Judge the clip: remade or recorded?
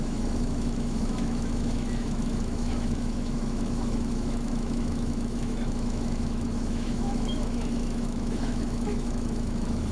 remade